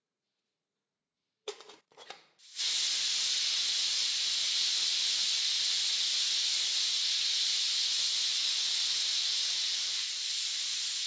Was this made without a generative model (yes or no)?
no